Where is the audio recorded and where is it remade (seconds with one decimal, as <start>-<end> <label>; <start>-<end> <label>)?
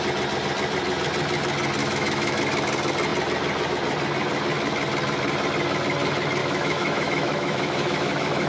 0.0-1.8 recorded; 1.8-2.4 remade; 2.4-6.4 recorded; 6.4-8.5 remade